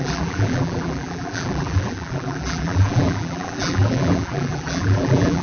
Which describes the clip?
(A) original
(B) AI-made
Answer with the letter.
B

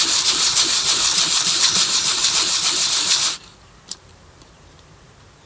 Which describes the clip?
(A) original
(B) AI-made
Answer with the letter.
B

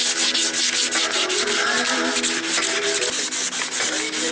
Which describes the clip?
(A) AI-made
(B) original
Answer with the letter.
B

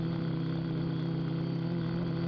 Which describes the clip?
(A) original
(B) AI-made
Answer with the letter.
A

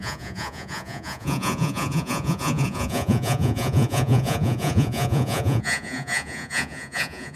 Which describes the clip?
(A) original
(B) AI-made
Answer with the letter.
B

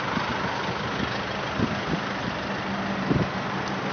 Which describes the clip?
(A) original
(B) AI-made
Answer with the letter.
A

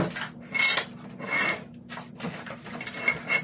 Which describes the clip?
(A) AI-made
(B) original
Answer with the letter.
B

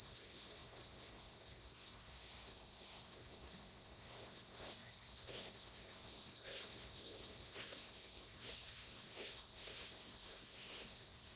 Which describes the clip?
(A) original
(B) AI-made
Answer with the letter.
B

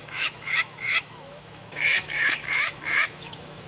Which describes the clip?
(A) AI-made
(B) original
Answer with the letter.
A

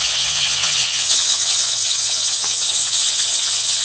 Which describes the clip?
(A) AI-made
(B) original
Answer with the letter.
A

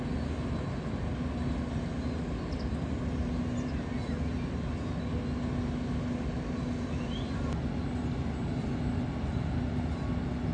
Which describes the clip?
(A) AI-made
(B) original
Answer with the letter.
B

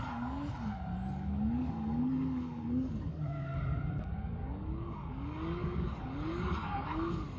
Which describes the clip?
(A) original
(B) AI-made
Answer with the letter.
B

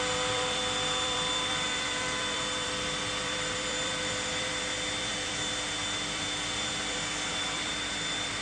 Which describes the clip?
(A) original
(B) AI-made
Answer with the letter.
B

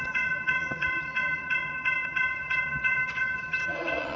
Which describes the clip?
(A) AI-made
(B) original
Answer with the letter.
A